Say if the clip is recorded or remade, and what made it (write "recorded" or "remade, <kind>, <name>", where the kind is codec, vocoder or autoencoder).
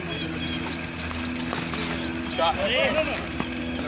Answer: recorded